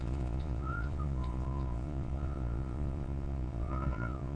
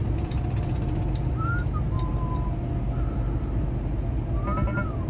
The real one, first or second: second